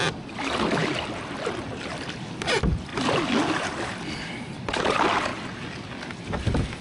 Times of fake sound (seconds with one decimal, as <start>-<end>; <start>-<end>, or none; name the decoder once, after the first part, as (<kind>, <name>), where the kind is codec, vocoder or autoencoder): none